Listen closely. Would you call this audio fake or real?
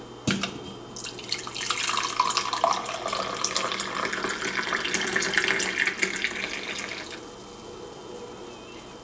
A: real